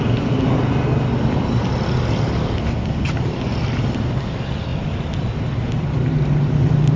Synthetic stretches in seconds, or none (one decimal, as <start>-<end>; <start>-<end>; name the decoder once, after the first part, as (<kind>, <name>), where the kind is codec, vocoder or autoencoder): none